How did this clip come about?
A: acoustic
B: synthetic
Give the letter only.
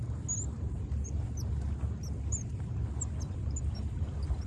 A